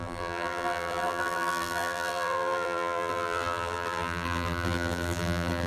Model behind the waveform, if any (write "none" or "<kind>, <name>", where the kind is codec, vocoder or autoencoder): vocoder, BigVGAN v2